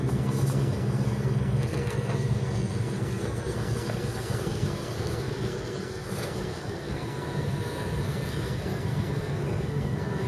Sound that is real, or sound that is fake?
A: fake